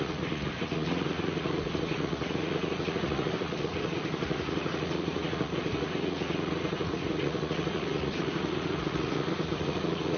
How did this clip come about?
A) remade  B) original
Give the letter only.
A